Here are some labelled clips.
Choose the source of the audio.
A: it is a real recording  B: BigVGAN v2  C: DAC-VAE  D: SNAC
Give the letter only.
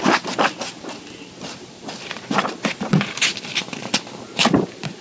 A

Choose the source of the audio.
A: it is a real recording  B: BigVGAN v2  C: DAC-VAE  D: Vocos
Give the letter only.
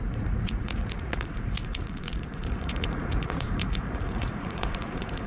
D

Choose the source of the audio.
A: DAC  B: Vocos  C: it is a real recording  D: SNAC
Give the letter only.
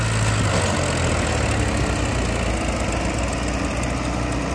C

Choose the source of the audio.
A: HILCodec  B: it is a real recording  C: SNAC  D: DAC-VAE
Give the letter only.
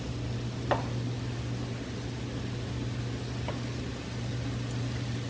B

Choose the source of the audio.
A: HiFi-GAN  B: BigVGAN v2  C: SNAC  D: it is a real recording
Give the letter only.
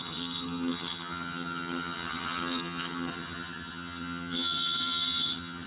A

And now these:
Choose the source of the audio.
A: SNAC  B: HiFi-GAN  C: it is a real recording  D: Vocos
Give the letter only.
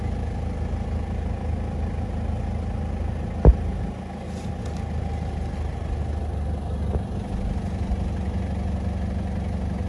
C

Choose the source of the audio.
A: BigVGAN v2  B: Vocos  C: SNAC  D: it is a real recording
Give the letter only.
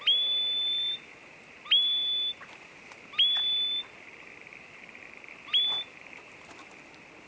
D